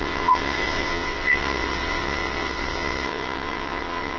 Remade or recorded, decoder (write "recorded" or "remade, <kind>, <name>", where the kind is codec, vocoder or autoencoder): remade, vocoder, WaveNeXt